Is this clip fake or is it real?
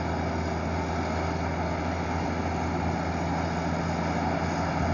real